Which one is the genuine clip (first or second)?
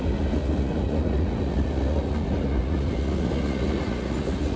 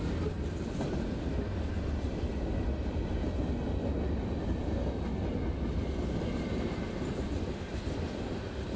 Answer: second